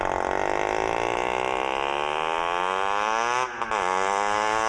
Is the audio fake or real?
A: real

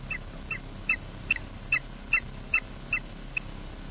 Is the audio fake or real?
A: real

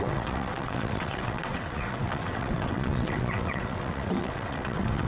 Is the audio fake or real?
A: fake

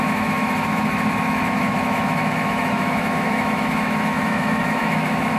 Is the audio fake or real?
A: fake